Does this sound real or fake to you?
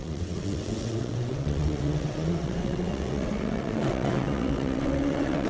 fake